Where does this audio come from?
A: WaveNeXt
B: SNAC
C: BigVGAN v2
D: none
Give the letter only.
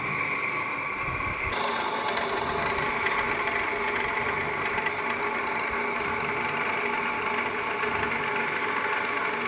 D